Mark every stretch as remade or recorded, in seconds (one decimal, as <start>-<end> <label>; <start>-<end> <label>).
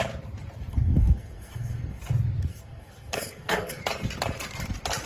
0.0-0.7 recorded; 0.7-2.0 remade; 2.0-2.5 recorded; 2.5-3.8 remade; 3.8-5.1 recorded